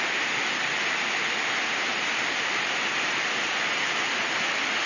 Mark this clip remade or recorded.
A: recorded